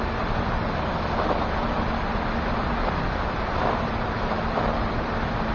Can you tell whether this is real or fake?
real